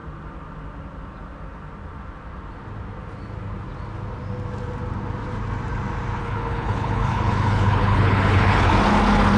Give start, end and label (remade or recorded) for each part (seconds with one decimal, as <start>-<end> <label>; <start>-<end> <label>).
0.0-6.2 recorded; 6.2-8.7 remade; 8.7-9.4 recorded